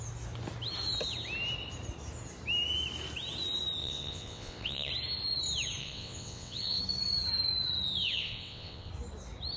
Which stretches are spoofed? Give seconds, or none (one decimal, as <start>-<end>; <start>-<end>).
3.8-4.9; 5.8-6.8; 8.0-8.9